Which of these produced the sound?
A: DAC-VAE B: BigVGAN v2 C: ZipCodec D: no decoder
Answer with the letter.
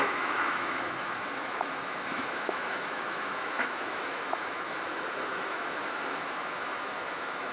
A